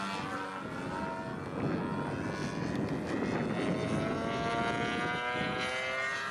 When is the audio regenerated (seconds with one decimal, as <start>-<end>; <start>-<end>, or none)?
none